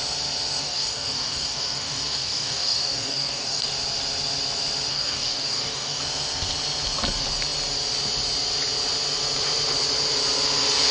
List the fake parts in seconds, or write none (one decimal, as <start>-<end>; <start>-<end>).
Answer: 0.6-3.7; 4.9-6.0